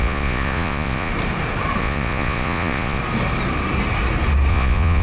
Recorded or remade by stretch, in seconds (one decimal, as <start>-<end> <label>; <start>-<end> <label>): 0.0-1.1 remade; 1.1-1.8 recorded; 1.8-3.0 remade; 3.0-4.5 recorded; 4.5-5.0 remade

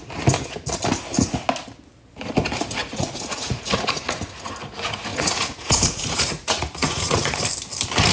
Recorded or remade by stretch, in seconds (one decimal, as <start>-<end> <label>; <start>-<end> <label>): 0.0-2.8 recorded; 2.8-4.5 remade; 4.5-5.1 recorded; 5.1-7.4 remade; 7.4-8.1 recorded